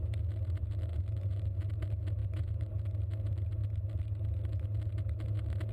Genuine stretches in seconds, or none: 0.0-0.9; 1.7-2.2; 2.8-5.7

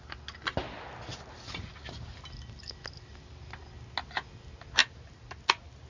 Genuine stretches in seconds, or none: 0.0-1.1; 2.2-3.1; 3.6-4.8; 5.4-5.9

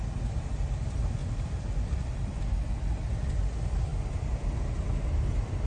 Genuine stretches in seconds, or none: 0.0-1.2; 2.8-5.7